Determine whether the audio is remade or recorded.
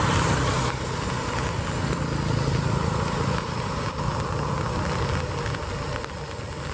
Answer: recorded